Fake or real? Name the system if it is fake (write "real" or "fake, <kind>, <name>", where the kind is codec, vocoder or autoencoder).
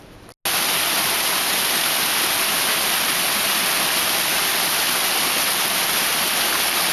real